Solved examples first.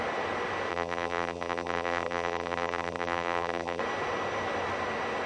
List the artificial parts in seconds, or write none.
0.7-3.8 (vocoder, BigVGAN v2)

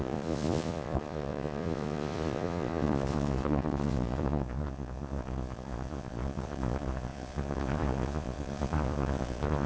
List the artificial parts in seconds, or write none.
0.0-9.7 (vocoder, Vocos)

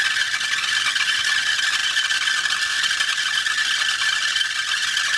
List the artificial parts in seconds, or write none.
1.8-2.9 (vocoder, BigVGAN v2)

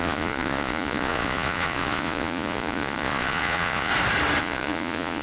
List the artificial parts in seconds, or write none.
0.0-3.9 (vocoder, Vocos); 4.4-5.2